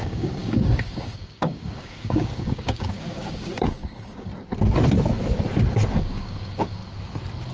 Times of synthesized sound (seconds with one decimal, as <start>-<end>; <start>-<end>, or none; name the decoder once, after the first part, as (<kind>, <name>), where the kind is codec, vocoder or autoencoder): 0.0-4.3 (codec, DAC); 5.9-6.8